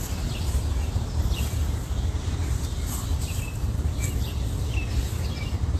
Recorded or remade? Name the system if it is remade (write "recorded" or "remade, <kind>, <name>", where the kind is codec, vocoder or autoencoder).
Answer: recorded